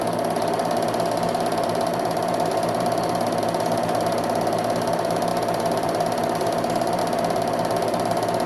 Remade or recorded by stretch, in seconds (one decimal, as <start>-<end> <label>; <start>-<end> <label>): 0.0-1.9 recorded; 1.9-3.4 remade; 3.4-5.3 recorded; 5.3-7.0 remade; 7.0-8.5 recorded